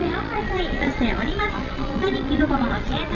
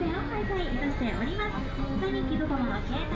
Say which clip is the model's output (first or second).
first